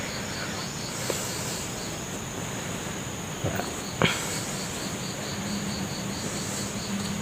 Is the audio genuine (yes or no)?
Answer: yes